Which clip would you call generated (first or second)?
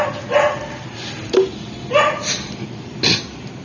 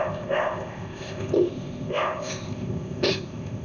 second